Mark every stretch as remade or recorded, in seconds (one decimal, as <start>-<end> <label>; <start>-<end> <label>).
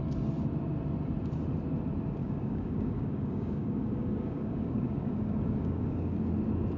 0.0-2.2 recorded; 2.2-6.3 remade; 6.3-6.8 recorded